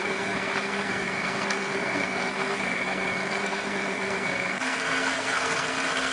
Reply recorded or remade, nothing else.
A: remade